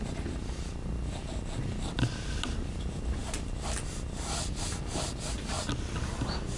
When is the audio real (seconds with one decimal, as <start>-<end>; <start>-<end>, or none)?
0.0-6.6